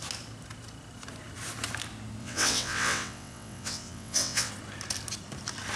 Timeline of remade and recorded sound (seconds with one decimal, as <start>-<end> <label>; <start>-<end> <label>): 0.0-2.2 recorded; 2.2-4.5 remade; 4.5-5.8 recorded